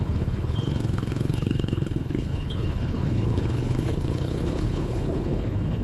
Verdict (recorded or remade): remade